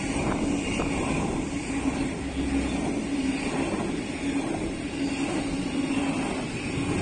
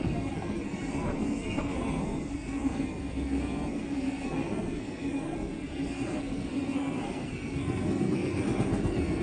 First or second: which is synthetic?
second